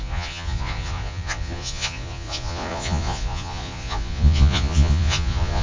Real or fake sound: fake